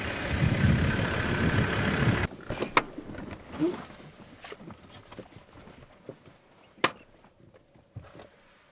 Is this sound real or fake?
real